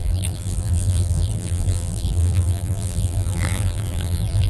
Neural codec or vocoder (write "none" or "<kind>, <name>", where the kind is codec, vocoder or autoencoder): vocoder, BigVGAN v2